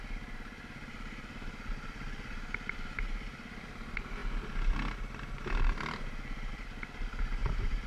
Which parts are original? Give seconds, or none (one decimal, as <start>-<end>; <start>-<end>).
0.0-0.9; 2.0-7.4